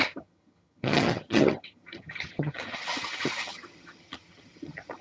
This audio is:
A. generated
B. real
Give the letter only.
A